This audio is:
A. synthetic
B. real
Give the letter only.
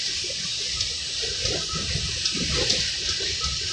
B